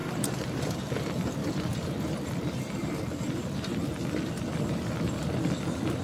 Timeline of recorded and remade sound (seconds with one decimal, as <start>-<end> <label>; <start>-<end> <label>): 0.0-0.8 remade; 0.8-6.0 recorded